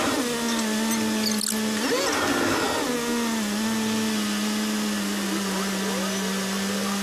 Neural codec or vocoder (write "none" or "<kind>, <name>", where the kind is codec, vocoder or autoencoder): none